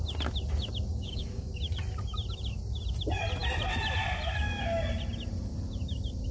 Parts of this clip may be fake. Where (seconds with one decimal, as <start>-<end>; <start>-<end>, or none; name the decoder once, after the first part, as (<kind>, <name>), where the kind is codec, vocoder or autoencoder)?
0.9-1.6 (codec, DAC)